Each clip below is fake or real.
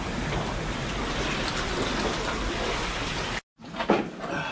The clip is real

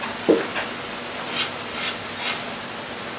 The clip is real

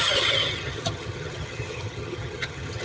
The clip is fake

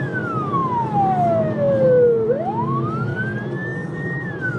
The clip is real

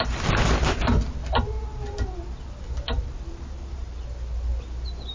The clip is real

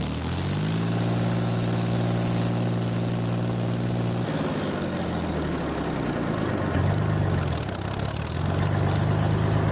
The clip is real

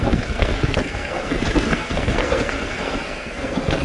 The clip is fake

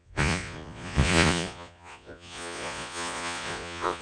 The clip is fake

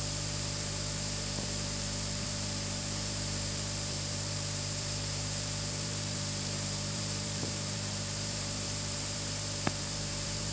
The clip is fake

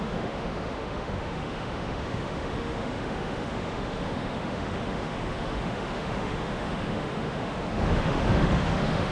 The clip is fake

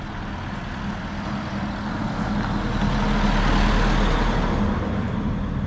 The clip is real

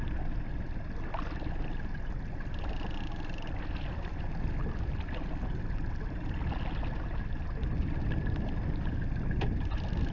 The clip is real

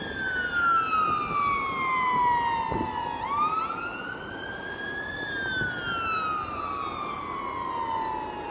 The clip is real